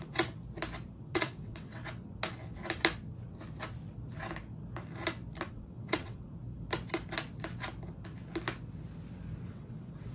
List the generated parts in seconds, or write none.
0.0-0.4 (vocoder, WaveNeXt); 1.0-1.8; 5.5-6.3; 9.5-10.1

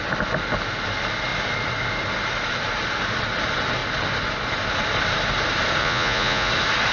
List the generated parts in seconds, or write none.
5.8-6.5 (vocoder, Vocos)

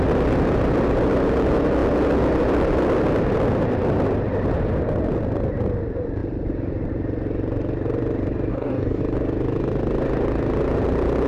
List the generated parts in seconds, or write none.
8.5-9.0 (codec, DAC)

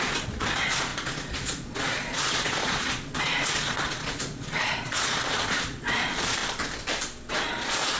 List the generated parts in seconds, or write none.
0.0-6.4 (vocoder, Vocos); 7.3-8.0

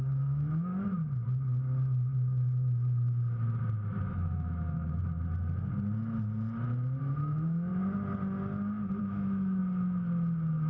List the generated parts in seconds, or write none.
0.0-0.7 (autoencoder, DAC-VAE); 4.0-5.0; 7.0-7.7; 9.0-9.6

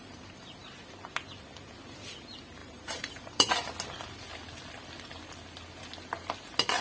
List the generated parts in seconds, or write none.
0.0-0.7 (vocoder, BigVGAN v2); 2.6-3.5

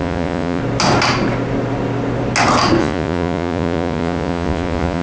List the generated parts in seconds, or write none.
0.0-0.6 (vocoder, Vocos); 2.8-5.0

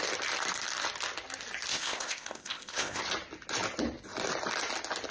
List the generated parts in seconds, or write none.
1.7-3.0 (codec, ZipCodec)